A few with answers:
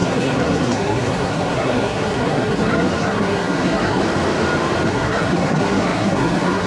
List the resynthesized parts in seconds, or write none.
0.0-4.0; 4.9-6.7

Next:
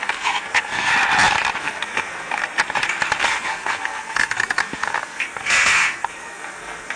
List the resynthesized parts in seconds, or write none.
0.0-0.9; 1.6-2.4; 3.2-7.0

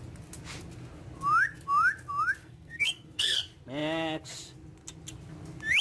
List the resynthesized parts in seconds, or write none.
2.4-3.4

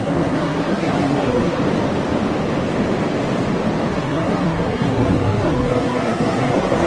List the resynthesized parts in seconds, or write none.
0.0-1.6; 3.9-6.9

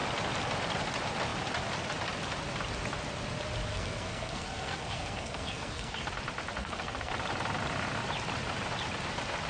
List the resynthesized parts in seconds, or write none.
3.7-6.1; 6.6-7.1

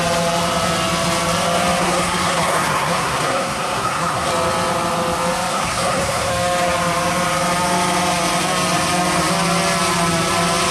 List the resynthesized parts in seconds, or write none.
1.8-4.3; 5.5-6.3

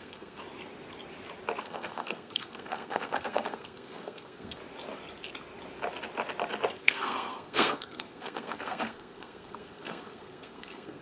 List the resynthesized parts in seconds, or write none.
0.0-0.4; 1.6-4.6; 6.8-11.0